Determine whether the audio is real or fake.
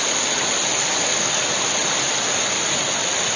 real